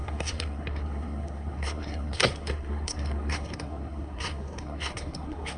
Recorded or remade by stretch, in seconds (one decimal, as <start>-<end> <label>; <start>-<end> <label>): 0.0-5.6 remade

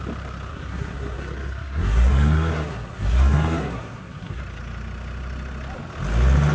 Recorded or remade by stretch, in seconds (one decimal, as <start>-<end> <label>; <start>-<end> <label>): 0.0-0.5 recorded; 0.5-4.4 remade; 4.4-6.5 recorded

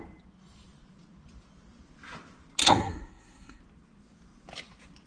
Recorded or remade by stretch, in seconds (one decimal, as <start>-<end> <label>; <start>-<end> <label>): 0.0-2.6 recorded; 2.6-3.6 remade; 3.6-5.1 recorded

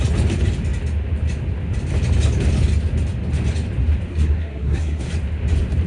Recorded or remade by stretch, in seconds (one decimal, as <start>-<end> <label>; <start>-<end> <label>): 0.0-4.1 recorded; 4.1-5.1 remade; 5.1-5.9 recorded

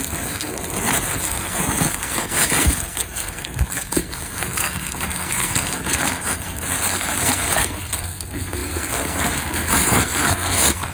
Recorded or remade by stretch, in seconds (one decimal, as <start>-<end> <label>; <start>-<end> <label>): 0.0-10.9 remade

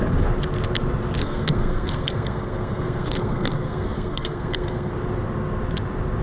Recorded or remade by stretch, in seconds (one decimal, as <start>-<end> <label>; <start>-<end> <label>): 0.0-1.2 recorded; 1.2-4.9 remade; 4.9-6.2 recorded

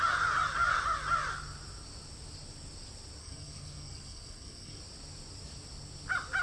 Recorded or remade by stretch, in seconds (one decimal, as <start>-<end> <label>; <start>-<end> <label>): 0.0-3.2 recorded; 3.2-4.8 remade; 4.8-6.4 recorded